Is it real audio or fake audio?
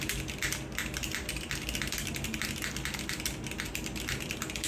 real